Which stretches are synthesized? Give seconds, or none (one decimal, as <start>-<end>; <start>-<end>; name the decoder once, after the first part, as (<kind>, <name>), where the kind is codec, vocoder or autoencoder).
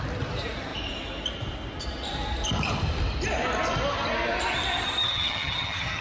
5.0-6.0 (vocoder, HiFi-GAN)